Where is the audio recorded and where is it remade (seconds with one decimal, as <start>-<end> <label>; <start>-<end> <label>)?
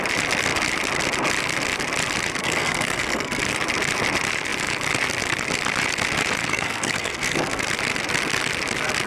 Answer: 0.0-2.4 recorded; 2.4-3.4 remade; 3.4-6.5 recorded; 6.5-7.6 remade; 7.6-9.1 recorded